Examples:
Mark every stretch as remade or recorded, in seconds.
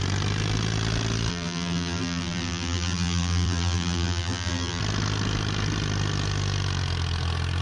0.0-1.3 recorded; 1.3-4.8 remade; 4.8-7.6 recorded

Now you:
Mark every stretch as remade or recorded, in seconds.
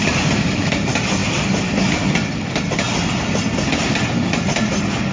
0.0-5.1 recorded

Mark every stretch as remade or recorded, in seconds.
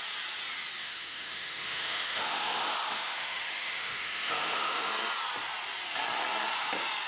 0.0-0.8 recorded; 0.8-4.9 remade; 4.9-7.1 recorded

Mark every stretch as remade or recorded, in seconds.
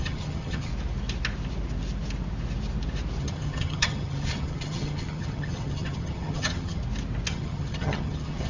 0.0-0.7 remade; 0.7-3.2 recorded; 3.2-6.8 remade; 6.8-7.3 recorded; 7.3-8.5 remade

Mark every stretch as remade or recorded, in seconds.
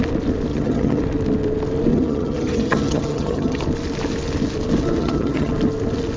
0.0-0.5 recorded; 0.5-1.0 remade; 1.0-1.9 recorded; 1.9-3.6 remade; 3.6-5.0 recorded; 5.0-5.5 remade; 5.5-6.2 recorded